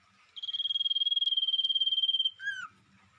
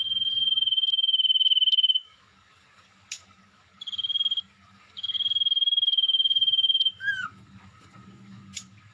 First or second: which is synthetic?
second